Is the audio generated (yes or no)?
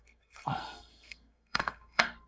yes